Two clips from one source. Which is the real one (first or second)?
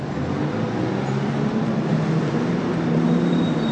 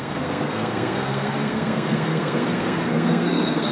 first